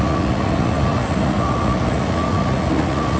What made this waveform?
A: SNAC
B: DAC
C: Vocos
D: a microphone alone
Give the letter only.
C